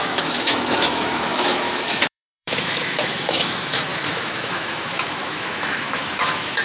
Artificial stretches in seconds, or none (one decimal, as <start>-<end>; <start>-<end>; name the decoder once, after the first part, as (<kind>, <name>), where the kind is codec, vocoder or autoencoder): 0.0-6.6 (autoencoder, DAC-VAE)